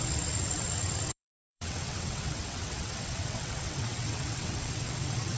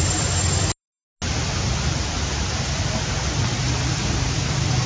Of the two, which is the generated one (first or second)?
first